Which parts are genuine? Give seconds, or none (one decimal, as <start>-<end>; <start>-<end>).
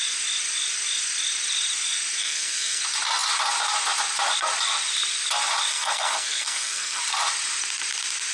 0.0-2.2; 2.8-5.7; 7.0-8.3